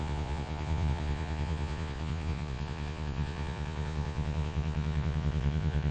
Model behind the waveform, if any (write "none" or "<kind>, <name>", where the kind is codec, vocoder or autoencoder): vocoder, Vocos